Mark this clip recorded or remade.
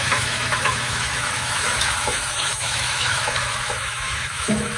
remade